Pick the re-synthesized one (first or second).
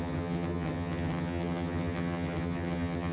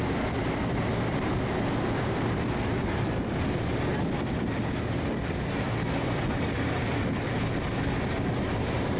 first